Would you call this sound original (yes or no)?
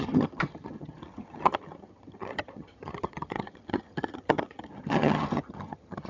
no